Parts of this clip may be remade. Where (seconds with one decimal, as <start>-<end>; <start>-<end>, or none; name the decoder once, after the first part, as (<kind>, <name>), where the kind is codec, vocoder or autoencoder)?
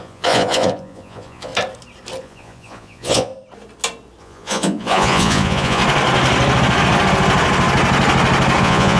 0.0-1.5 (vocoder, Vocos); 2.2-3.3; 4.2-5.8; 8.6-9.0